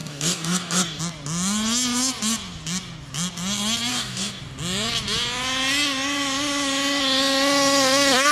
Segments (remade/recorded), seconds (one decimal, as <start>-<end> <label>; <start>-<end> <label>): 0.0-1.0 remade; 1.0-3.9 recorded; 3.9-4.4 remade; 4.4-8.3 recorded